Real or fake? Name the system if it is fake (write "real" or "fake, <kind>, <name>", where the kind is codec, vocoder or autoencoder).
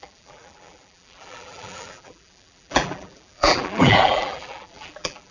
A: fake, vocoder, BigVGAN v2